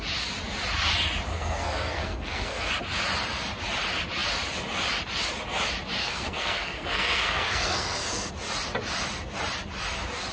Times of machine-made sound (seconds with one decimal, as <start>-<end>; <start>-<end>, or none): 1.3-2.7; 6.0-8.3